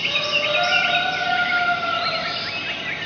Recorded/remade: recorded